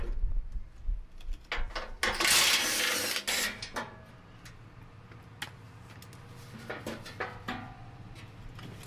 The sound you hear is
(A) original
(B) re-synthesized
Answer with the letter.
A